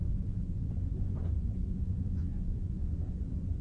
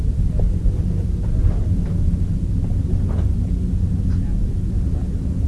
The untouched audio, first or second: second